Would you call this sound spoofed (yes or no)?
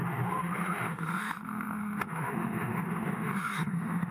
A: yes